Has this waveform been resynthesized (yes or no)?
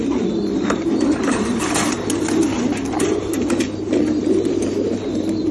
no